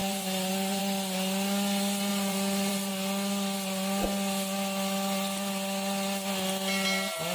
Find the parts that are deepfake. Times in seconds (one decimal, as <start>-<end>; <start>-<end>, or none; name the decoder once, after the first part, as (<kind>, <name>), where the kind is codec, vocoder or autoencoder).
0.0-0.8 (vocoder, BigVGAN v2); 2.1-2.9